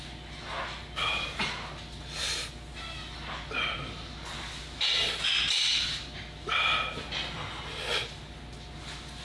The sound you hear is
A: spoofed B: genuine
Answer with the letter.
B